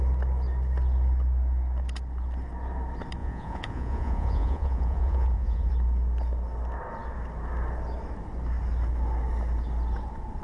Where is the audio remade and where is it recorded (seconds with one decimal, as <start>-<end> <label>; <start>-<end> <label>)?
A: 0.0-3.2 recorded; 3.2-5.7 remade; 5.7-10.4 recorded